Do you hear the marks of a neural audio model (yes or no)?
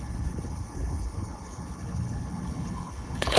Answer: yes